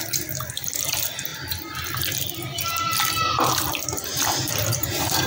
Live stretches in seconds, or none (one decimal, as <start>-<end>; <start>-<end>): 0.0-5.3